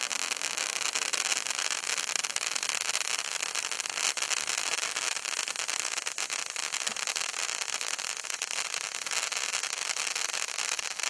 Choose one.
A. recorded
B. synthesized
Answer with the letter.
A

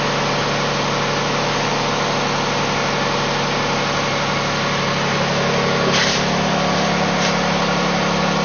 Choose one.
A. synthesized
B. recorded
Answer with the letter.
B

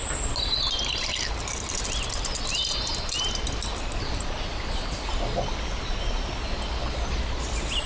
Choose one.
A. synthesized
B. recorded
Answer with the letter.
B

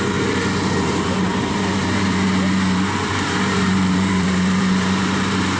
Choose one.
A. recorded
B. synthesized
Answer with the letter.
B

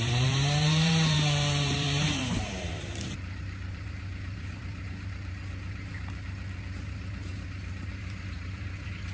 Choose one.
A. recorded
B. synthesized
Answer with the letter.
B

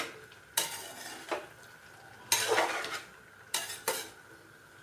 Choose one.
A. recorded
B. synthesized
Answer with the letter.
A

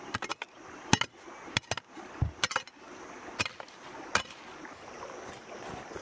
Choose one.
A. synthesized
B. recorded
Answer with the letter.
B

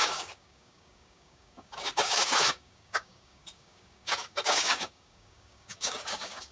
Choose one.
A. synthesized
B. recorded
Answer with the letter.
A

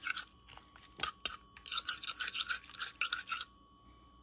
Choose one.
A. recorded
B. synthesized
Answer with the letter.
A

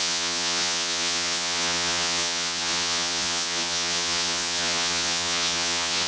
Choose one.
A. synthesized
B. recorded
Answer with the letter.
A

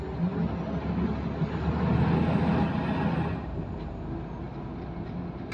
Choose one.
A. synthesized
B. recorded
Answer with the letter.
B